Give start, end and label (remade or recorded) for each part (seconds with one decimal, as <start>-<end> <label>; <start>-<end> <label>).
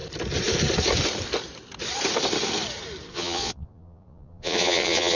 0.0-3.1 recorded; 3.1-5.2 remade